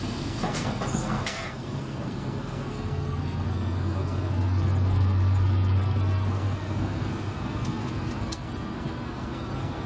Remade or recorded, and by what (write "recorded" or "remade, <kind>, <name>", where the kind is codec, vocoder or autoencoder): remade, codec, SNAC